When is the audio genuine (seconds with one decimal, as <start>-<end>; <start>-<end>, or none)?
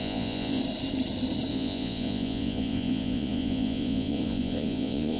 0.6-1.5